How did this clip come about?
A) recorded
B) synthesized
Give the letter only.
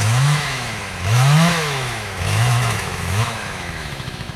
B